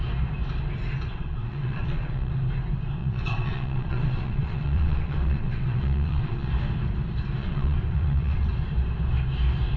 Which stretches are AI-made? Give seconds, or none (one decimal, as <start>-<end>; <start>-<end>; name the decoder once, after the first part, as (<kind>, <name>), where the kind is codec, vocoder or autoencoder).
1.1-2.3 (vocoder, WaveNeXt); 3.0-6.5; 7.4-8.5